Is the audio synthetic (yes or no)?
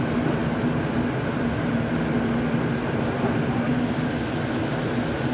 no